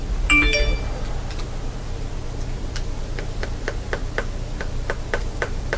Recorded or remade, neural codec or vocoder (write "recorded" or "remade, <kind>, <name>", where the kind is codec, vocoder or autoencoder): recorded